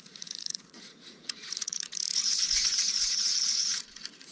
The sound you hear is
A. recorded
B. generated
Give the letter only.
B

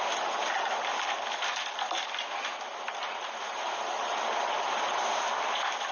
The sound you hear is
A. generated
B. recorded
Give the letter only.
B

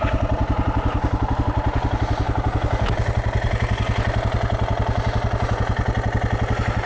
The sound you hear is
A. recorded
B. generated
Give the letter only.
A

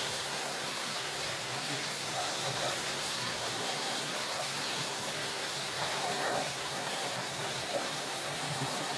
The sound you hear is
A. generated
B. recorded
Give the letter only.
A